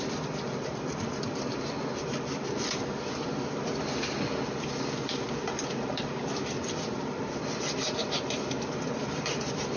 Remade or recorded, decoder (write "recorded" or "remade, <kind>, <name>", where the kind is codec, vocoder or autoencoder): remade, vocoder, BigVGAN v2